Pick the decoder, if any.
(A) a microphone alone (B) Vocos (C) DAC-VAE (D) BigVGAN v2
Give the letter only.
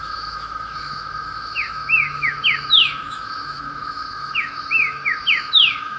C